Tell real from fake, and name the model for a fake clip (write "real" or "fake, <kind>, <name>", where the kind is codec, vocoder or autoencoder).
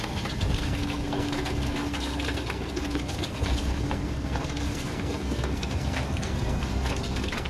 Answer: fake, codec, SNAC